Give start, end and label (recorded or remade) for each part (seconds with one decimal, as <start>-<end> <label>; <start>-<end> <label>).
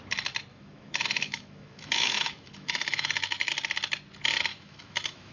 0.0-0.5 recorded; 0.5-3.5 remade; 3.5-4.5 recorded; 4.5-5.3 remade